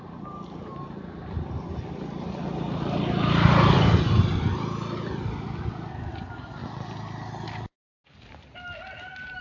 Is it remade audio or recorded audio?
recorded